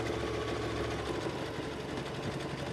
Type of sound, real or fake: real